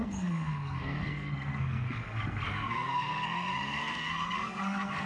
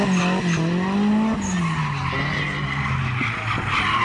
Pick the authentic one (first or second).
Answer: second